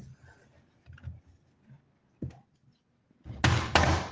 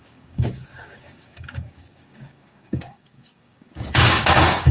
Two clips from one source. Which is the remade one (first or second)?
second